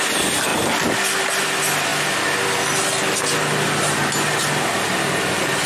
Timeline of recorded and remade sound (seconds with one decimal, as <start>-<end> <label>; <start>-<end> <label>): 0.0-5.7 recorded